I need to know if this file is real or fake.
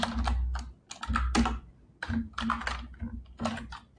real